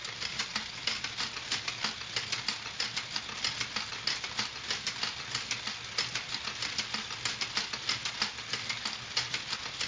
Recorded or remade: recorded